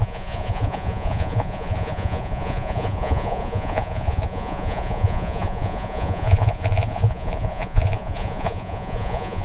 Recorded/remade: remade